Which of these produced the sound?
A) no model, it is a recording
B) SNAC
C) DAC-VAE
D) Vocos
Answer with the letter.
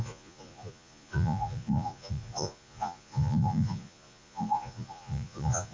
D